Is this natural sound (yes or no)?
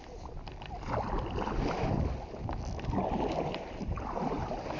yes